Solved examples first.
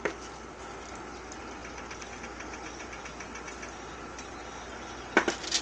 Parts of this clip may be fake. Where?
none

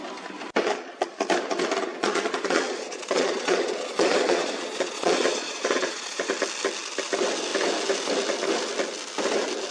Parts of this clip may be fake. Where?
0.6-1.1; 1.9-6.3

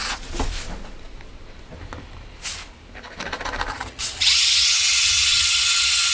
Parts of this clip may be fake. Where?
3.7-6.1

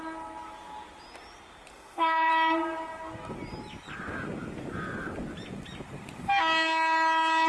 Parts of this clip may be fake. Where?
1.7-2.3